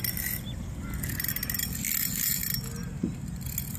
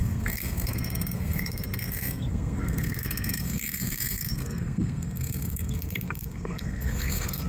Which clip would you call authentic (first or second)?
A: first